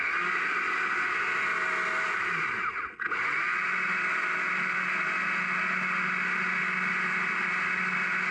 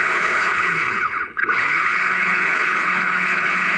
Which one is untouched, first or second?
first